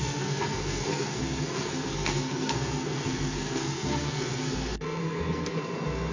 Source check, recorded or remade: remade